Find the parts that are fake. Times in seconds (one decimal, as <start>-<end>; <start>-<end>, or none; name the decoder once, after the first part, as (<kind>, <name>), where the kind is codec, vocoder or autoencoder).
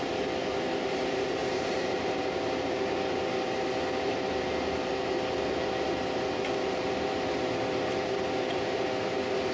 1.4-2.5 (vocoder, BigVGAN v2)